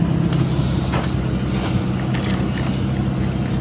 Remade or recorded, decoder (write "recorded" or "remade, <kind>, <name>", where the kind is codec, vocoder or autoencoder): recorded